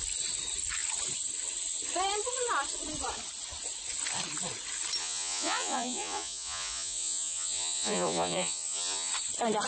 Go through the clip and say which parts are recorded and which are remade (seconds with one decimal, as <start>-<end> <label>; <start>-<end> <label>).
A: 0.0-5.0 recorded; 5.0-9.1 remade; 9.1-9.7 recorded